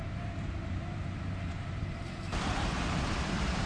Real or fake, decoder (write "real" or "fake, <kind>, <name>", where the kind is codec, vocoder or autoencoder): fake, vocoder, BigVGAN v2